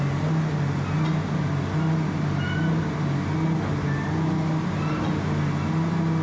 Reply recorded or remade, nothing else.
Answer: recorded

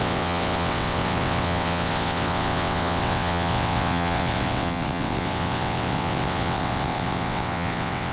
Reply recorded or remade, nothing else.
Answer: remade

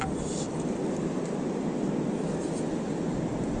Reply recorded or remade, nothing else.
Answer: recorded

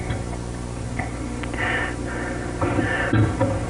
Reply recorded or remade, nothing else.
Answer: recorded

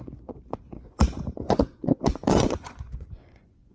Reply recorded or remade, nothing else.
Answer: remade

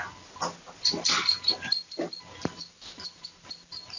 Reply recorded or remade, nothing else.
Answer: recorded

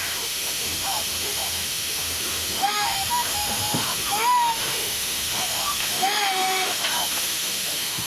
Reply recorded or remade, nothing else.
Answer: remade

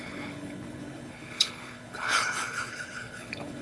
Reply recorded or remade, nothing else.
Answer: remade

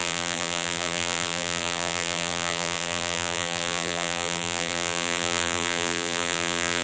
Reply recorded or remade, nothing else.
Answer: remade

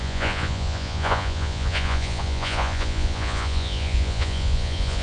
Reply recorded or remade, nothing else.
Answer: remade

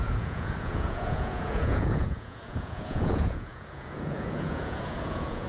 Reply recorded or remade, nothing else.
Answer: remade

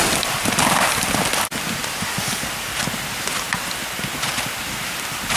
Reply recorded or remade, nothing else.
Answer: recorded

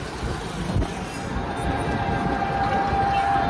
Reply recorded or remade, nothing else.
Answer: recorded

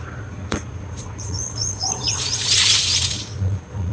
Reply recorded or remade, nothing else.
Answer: remade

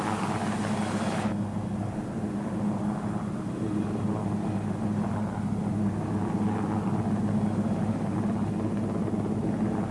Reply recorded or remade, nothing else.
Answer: recorded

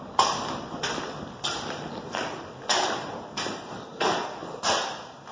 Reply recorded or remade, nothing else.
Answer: recorded